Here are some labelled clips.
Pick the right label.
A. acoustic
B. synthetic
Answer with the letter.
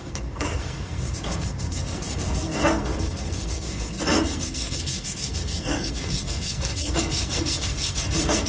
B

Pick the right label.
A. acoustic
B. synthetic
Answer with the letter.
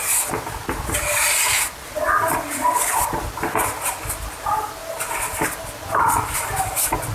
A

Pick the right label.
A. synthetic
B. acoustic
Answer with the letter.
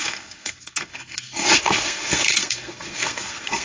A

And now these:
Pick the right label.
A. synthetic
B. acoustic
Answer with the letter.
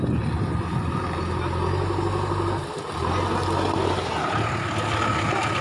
B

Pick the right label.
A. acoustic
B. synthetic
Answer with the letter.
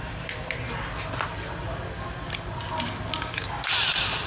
A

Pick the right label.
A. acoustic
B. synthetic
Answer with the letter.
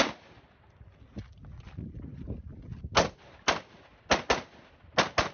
A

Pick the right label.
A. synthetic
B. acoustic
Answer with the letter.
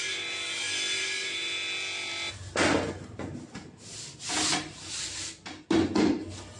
B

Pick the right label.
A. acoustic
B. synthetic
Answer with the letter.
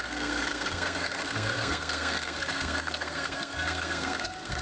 B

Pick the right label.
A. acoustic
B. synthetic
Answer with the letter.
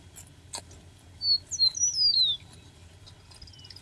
A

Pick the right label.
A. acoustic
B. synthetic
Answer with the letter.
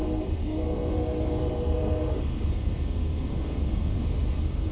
B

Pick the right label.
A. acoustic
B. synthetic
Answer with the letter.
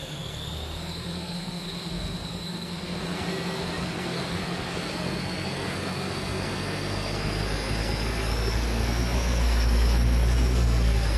B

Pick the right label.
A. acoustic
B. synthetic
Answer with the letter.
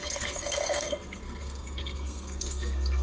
B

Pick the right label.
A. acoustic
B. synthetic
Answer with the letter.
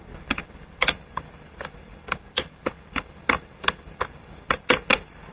A